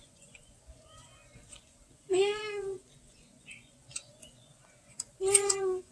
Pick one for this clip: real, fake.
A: fake